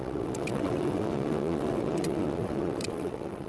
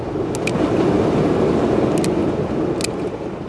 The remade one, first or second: first